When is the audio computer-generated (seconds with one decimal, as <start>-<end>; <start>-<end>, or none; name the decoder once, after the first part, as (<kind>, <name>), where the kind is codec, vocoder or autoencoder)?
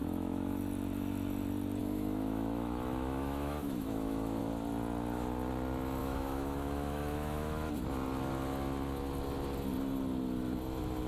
0.0-0.6 (autoencoder, DAC-VAE); 1.8-4.4; 6.0-7.7